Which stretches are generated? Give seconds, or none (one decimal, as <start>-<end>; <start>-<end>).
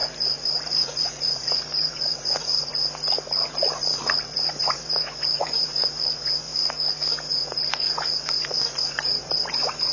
0.0-2.7; 4.6-6.5; 7.3-9.9